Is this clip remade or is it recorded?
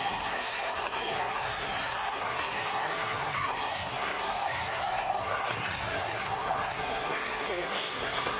remade